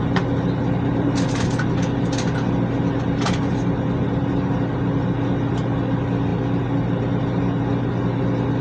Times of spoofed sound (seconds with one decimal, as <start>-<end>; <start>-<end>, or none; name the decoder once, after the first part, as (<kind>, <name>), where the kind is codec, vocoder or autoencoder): none